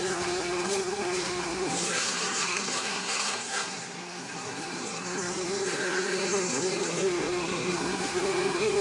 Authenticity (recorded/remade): remade